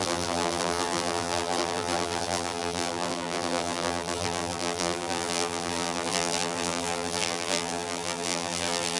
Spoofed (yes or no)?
yes